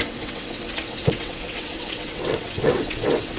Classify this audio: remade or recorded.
remade